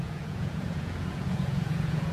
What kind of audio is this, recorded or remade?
remade